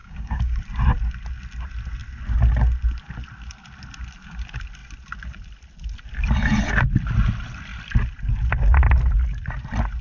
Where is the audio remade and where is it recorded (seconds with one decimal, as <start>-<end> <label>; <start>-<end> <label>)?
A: 0.0-0.6 remade; 0.6-10.0 recorded